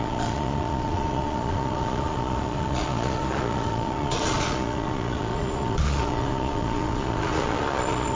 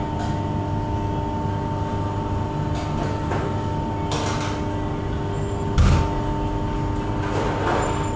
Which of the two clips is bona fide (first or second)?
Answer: second